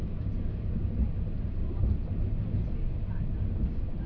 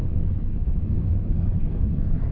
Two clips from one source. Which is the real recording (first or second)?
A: first